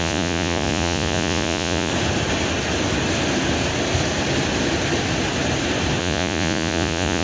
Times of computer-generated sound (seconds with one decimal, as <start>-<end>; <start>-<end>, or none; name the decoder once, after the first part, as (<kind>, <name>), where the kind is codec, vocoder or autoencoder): 0.0-1.9 (vocoder, Vocos); 6.0-7.2